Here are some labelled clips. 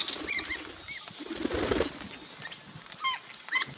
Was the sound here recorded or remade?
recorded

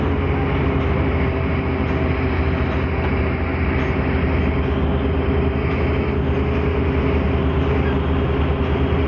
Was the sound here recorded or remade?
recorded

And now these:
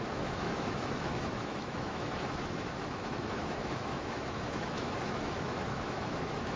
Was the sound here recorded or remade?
remade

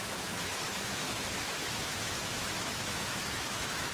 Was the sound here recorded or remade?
remade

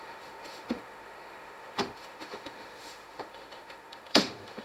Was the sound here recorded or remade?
remade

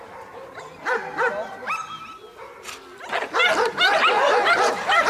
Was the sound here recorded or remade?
recorded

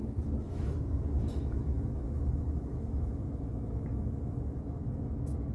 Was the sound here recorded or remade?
remade